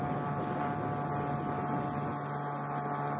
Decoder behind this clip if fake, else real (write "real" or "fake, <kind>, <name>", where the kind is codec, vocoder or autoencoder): real